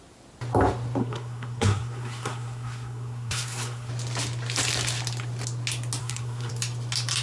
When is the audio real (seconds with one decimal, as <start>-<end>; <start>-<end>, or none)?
0.0-1.0; 3.9-6.0; 6.5-7.2